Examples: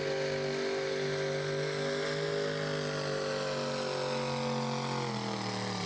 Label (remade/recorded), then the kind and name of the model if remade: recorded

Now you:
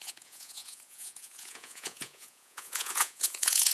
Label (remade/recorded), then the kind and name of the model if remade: remade, vocoder, Vocos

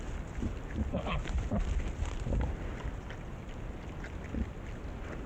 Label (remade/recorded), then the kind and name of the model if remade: recorded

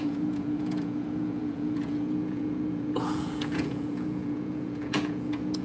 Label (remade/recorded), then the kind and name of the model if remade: remade, vocoder, Vocos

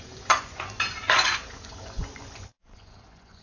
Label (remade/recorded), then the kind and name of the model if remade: remade, vocoder, Vocos